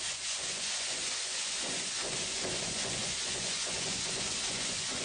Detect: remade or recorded remade